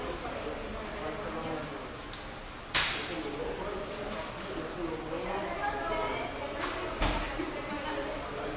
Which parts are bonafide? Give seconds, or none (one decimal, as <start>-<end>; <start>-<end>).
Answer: 0.0-2.0; 2.7-8.6